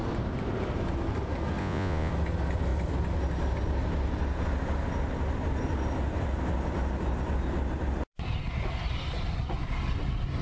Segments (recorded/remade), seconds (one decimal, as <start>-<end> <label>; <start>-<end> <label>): 0.0-1.6 recorded; 1.6-2.1 remade; 2.1-10.4 recorded